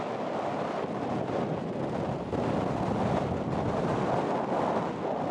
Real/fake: real